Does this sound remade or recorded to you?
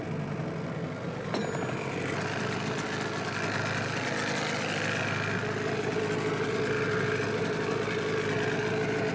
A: recorded